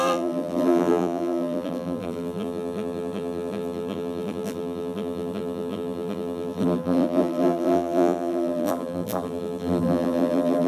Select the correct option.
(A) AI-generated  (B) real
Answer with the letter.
A